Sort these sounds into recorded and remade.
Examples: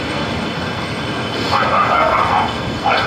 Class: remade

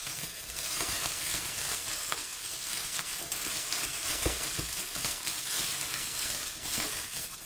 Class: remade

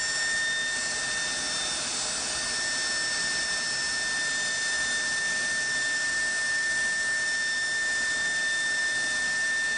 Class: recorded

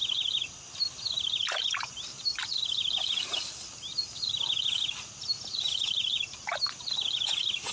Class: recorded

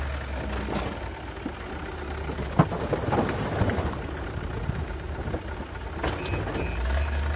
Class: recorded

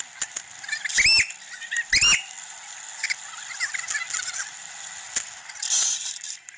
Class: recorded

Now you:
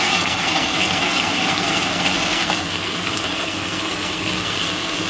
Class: remade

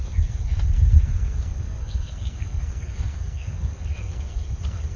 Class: remade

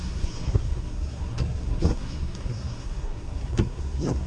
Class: remade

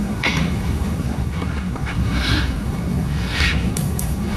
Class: remade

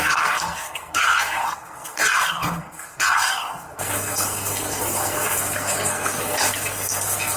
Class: remade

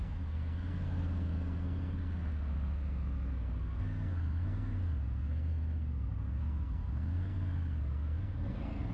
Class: remade